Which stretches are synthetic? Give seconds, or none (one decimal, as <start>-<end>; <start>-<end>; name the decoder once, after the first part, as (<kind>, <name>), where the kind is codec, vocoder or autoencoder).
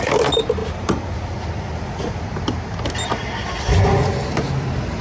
none